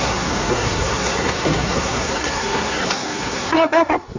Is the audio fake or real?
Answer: fake